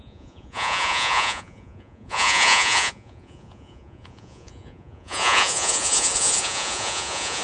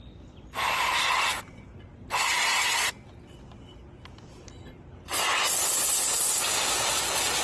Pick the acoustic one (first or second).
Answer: second